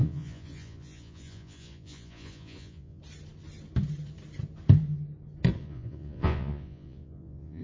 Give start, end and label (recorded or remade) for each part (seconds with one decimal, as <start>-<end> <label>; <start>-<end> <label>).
0.0-3.0 remade; 3.0-5.6 recorded; 5.6-7.6 remade